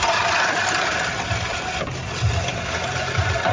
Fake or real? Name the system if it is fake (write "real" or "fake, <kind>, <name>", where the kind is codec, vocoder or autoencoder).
real